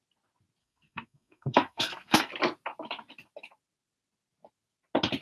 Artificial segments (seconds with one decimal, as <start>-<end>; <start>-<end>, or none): 0.6-2.3